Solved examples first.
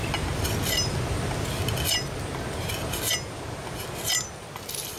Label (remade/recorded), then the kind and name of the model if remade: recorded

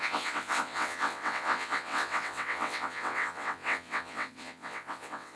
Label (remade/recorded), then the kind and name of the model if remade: remade, vocoder, WaveNeXt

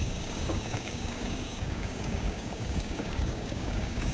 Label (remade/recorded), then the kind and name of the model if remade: remade, codec, DAC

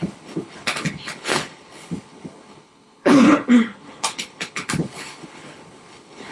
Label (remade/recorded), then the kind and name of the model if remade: remade, codec, HILCodec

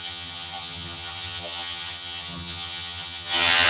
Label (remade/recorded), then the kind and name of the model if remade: remade, vocoder, HiFi-GAN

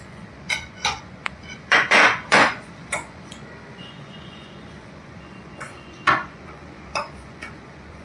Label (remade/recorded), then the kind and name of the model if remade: remade, vocoder, Vocos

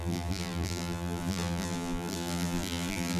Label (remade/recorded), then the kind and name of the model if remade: remade, vocoder, BigVGAN v2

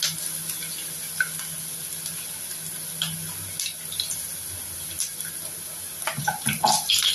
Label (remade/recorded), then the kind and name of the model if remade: recorded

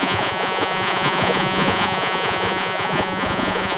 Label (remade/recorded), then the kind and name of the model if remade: remade, vocoder, Vocos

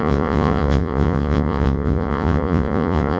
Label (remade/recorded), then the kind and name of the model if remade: remade, vocoder, Vocos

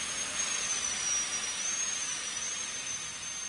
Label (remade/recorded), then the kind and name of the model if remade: recorded